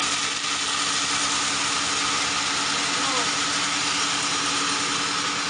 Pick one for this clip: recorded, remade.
recorded